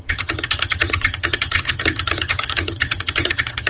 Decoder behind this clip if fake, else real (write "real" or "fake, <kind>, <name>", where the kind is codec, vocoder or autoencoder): fake, vocoder, HiFi-GAN